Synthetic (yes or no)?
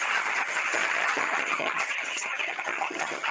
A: yes